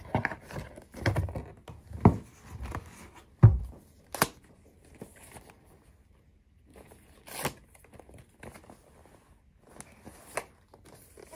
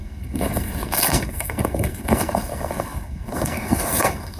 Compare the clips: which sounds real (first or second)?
first